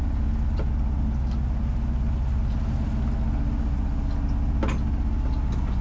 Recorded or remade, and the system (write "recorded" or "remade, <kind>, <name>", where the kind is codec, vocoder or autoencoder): recorded